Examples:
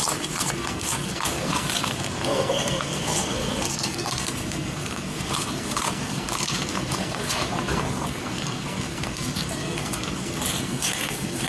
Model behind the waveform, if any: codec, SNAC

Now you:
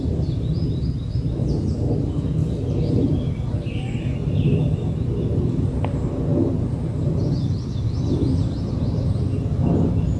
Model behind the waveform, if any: none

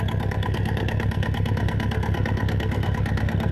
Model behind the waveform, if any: codec, SNAC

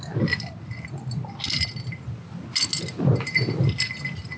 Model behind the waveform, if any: none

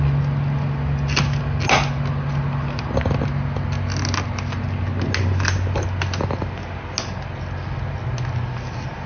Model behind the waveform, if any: none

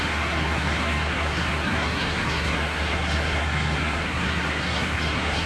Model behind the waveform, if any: codec, SNAC